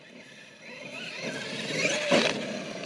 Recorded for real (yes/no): yes